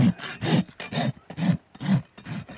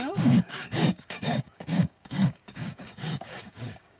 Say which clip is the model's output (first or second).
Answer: second